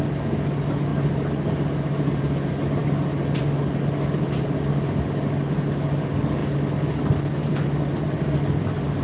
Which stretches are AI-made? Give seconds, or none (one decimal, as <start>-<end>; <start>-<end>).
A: none